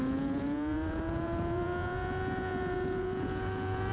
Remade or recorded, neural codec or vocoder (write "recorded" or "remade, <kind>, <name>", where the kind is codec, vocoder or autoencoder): remade, vocoder, Vocos